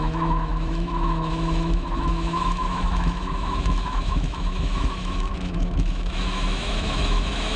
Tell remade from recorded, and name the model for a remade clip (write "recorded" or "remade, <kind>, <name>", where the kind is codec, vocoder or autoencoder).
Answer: remade, autoencoder, DAC-VAE